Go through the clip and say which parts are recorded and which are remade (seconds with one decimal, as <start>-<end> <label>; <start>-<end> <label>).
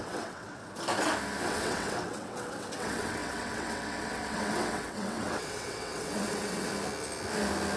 0.0-0.6 remade; 0.6-1.4 recorded; 1.4-6.7 remade; 6.7-7.8 recorded